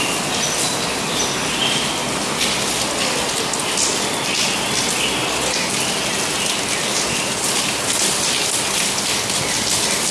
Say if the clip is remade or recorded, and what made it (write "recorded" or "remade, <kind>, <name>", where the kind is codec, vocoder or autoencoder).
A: recorded